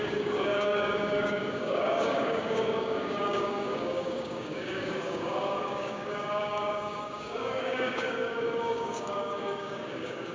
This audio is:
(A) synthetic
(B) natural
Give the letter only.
A